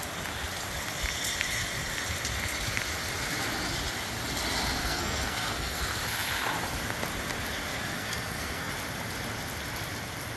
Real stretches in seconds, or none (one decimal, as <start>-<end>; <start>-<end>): 0.0-4.8; 5.8-7.7; 8.7-10.4